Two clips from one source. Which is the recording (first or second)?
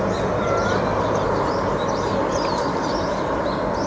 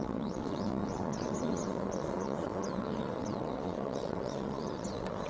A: first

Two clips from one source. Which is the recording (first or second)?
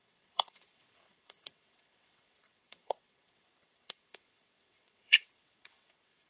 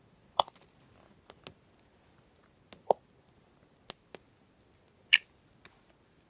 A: second